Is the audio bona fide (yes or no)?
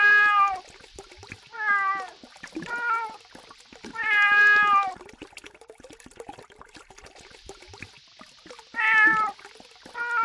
yes